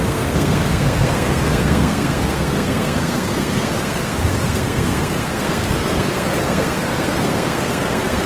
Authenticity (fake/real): fake